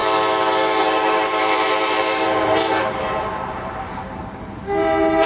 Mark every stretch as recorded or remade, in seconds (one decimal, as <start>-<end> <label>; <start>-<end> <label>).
0.0-0.8 recorded; 0.8-5.3 remade